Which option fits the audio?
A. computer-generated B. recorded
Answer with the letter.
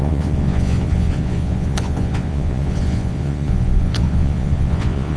A